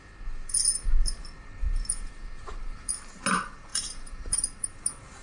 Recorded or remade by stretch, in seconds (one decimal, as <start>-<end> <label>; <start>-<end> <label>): 0.0-1.4 recorded; 1.4-3.2 remade; 3.2-3.7 recorded; 3.7-4.4 remade; 4.4-5.2 recorded